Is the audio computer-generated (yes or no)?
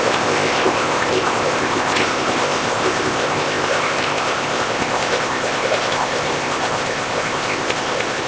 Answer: yes